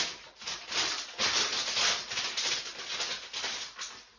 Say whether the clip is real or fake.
real